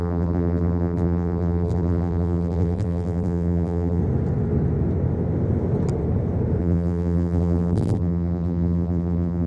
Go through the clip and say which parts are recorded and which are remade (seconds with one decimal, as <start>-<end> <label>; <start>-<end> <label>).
0.0-4.0 remade; 4.0-6.6 recorded; 6.6-9.5 remade